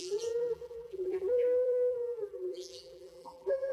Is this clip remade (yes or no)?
yes